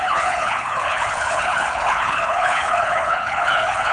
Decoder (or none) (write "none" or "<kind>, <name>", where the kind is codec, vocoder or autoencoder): codec, HILCodec